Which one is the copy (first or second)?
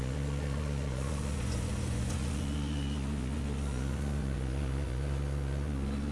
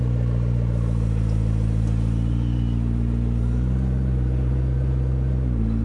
first